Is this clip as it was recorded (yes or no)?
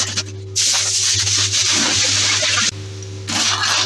yes